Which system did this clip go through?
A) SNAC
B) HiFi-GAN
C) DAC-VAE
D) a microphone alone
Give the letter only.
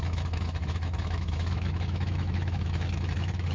C